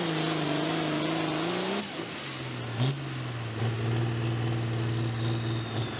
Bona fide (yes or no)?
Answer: yes